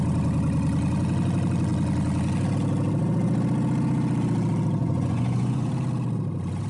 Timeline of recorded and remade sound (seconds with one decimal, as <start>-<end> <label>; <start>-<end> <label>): 0.0-4.8 recorded; 4.8-5.7 remade; 5.7-6.7 recorded